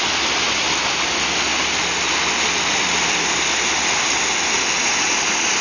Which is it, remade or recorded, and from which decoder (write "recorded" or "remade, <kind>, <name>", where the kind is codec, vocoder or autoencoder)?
recorded